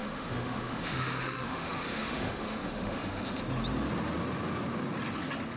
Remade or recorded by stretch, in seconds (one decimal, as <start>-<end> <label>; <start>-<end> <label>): 0.0-3.4 remade; 3.4-5.6 recorded